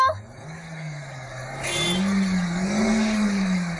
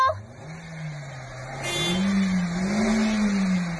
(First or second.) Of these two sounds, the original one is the second